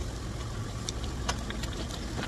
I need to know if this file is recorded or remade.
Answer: recorded